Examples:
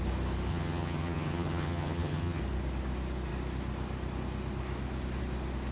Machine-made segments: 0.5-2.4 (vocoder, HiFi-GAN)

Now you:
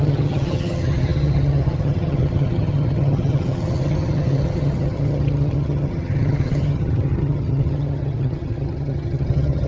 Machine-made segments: 0.0-9.7 (vocoder, HiFi-GAN)